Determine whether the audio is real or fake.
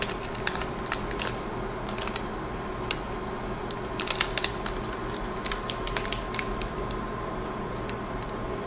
real